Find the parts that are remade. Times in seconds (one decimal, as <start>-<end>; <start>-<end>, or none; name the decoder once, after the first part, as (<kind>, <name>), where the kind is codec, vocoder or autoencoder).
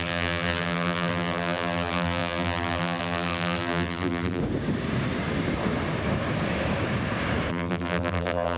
0.0-4.4 (vocoder, BigVGAN v2); 7.5-8.6